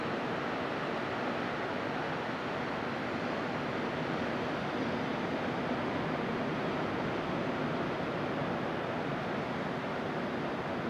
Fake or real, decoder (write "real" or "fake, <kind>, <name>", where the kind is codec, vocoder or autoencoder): real